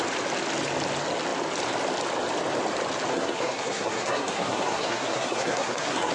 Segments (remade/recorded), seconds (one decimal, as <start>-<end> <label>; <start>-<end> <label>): 0.0-3.1 recorded; 3.1-6.1 remade